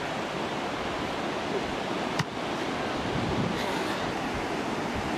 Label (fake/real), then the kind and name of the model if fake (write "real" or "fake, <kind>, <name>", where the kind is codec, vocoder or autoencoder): real